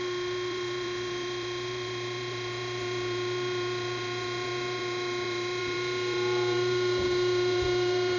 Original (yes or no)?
no